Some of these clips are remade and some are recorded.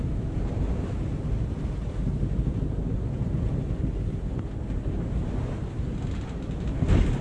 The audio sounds recorded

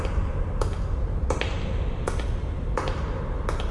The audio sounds recorded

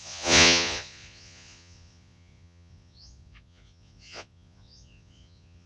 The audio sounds remade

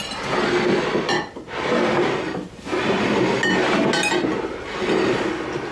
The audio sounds recorded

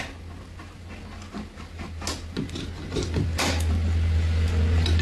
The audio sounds recorded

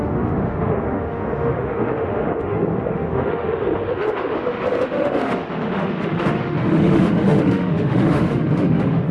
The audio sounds remade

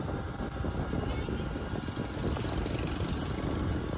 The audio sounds recorded